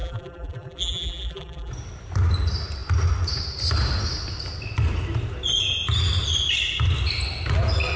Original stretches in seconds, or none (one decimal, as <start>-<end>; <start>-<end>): 1.7-8.0